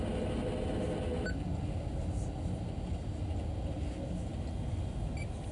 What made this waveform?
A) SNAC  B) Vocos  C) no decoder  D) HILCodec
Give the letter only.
C